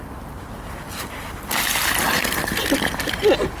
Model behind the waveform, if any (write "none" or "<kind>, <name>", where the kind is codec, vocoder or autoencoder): none